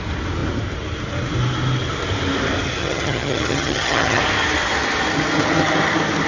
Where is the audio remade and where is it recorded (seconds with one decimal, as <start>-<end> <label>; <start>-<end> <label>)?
0.0-2.8 recorded; 2.8-4.2 remade; 4.2-6.3 recorded